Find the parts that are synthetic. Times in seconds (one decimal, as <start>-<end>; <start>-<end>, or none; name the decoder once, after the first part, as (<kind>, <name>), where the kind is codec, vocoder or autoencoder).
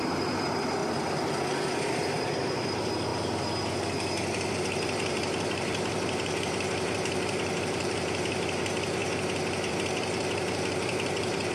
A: 0.0-0.8 (vocoder, BigVGAN v2); 1.8-3.1; 4.5-9.0; 9.7-11.5